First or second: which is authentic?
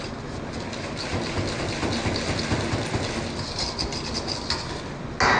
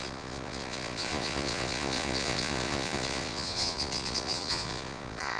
first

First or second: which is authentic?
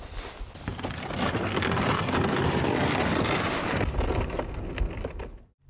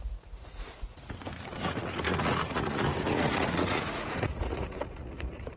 first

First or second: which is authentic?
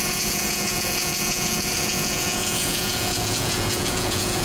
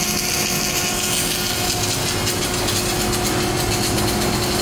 second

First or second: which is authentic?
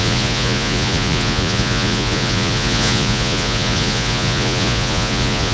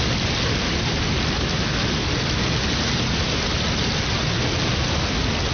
second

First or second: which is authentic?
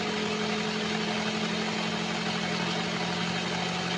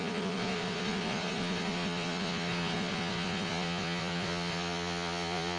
first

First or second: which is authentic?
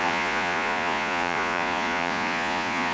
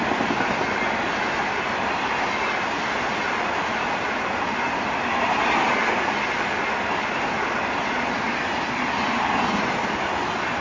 second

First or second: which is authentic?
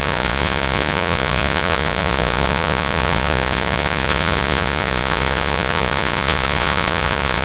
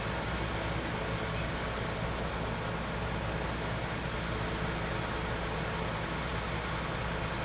second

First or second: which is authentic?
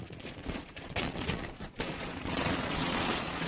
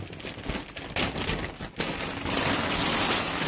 second